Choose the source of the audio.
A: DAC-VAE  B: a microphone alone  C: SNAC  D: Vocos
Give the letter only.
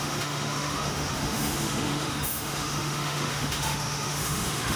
A